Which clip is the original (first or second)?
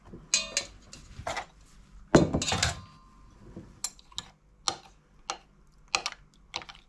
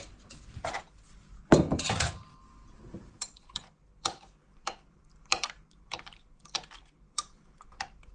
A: first